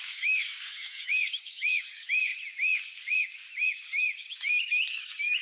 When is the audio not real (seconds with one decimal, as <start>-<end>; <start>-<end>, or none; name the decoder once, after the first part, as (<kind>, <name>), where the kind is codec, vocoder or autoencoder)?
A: 0.0-2.3 (codec, DAC); 3.7-5.4